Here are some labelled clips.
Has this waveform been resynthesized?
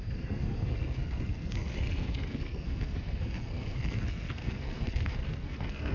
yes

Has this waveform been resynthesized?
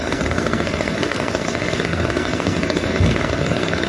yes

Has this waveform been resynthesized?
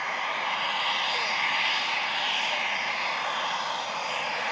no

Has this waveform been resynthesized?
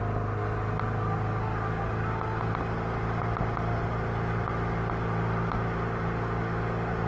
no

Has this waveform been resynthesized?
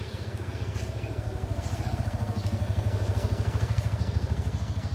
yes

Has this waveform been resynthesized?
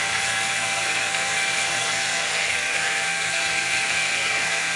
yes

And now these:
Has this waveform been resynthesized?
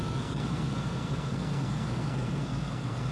yes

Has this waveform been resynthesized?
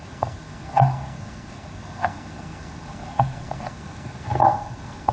yes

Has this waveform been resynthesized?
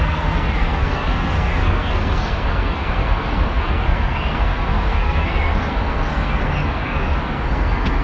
yes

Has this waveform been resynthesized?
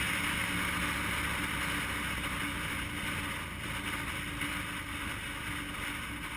no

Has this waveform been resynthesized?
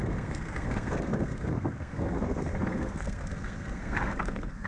yes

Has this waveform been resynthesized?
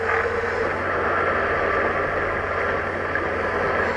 no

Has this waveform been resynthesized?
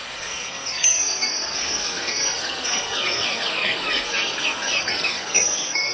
yes